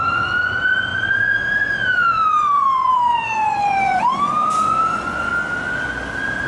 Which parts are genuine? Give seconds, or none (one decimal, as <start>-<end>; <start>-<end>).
5.3-6.5